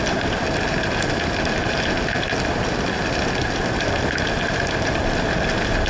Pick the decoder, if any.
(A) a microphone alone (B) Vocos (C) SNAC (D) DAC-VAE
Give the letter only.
A